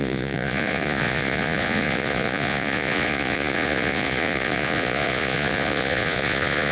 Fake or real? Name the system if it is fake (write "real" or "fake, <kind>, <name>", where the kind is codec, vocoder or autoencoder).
fake, vocoder, Vocos